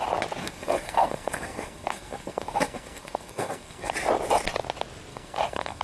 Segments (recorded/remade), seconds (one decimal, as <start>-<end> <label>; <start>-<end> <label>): 0.0-0.4 recorded; 0.4-3.9 remade; 3.9-5.1 recorded; 5.1-5.8 remade